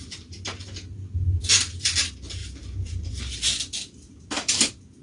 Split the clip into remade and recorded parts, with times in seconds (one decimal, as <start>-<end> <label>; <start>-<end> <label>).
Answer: 0.0-2.4 recorded; 2.4-3.1 remade; 3.1-5.0 recorded